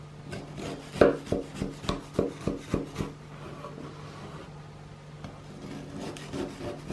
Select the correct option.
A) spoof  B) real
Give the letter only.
B